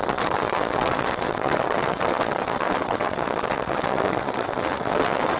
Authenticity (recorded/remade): remade